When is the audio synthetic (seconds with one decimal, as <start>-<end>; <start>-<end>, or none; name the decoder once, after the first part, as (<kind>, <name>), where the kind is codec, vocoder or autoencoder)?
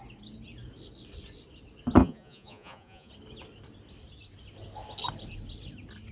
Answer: 2.0-3.1 (vocoder, Vocos)